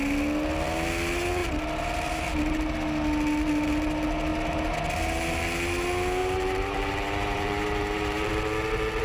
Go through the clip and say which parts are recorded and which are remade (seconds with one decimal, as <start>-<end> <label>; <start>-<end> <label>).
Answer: 0.0-6.2 recorded; 6.2-8.3 remade; 8.3-9.0 recorded